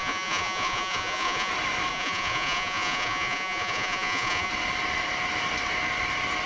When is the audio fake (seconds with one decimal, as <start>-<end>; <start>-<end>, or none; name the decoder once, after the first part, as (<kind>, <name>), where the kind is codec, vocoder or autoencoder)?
0.0-1.5 (vocoder, Vocos); 1.9-4.5